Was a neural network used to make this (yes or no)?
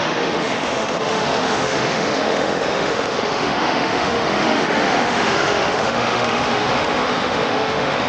yes